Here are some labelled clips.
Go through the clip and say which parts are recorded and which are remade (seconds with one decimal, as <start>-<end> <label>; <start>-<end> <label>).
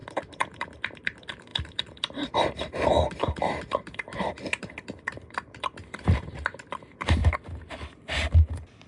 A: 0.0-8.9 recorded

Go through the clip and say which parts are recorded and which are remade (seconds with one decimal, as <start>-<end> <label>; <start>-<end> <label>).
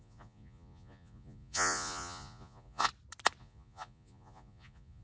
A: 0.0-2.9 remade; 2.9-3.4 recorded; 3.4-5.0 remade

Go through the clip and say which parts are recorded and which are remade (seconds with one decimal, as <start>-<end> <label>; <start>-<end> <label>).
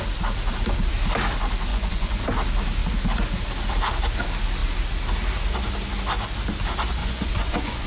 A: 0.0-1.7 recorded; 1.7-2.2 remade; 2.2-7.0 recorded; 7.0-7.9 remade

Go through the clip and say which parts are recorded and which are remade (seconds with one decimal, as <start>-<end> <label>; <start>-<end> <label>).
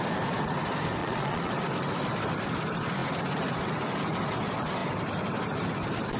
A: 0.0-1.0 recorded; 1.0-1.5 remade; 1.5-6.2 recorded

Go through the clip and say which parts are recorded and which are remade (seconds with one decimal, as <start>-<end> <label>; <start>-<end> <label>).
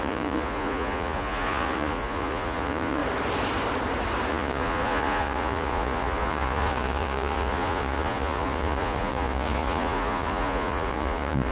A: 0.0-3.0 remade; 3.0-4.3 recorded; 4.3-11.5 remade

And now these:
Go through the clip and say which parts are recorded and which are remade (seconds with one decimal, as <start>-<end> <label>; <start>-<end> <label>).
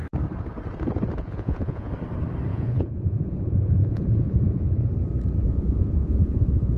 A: 0.0-1.2 recorded; 1.2-1.9 remade; 1.9-2.5 recorded; 2.5-4.9 remade; 4.9-5.4 recorded; 5.4-6.8 remade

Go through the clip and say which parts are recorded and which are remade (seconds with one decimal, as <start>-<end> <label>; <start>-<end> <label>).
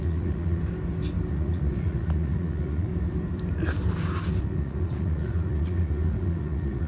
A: 0.0-0.6 remade; 0.6-1.3 recorded; 1.3-2.9 remade; 2.9-4.4 recorded; 4.4-6.9 remade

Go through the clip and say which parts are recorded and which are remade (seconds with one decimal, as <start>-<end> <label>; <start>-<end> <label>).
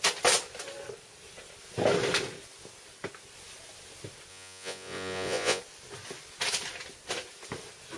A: 0.0-4.3 recorded; 4.3-5.6 remade; 5.6-8.0 recorded